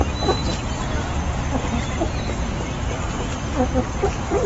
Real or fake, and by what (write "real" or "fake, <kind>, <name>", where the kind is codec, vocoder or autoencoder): real